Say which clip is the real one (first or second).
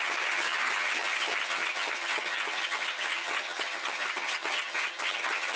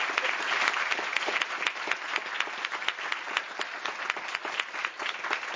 second